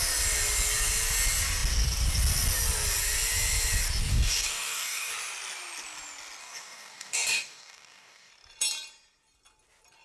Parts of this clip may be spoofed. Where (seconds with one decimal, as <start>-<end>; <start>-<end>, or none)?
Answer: 4.1-5.1; 6.4-8.3